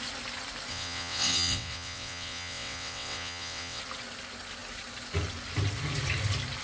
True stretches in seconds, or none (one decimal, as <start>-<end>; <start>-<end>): 0.0-0.7; 3.8-6.6